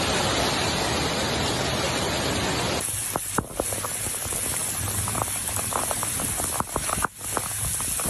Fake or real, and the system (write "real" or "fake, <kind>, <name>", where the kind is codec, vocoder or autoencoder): real